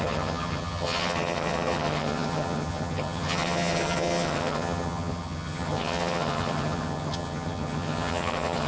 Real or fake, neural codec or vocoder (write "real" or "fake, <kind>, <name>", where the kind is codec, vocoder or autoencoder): fake, vocoder, HiFi-GAN